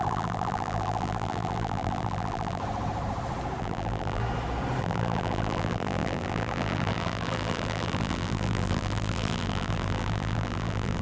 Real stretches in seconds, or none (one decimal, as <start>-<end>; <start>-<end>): 2.6-3.6; 4.2-4.8